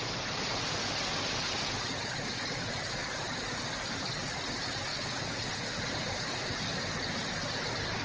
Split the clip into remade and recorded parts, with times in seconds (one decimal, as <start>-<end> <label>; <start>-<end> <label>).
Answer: 0.0-4.9 recorded; 4.9-5.8 remade; 5.8-8.0 recorded